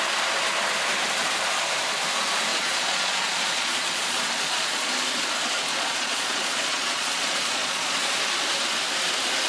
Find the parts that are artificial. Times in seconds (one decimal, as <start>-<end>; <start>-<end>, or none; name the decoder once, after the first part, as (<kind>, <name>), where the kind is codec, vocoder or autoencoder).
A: 2.5-4.9 (vocoder, Vocos); 5.7-8.2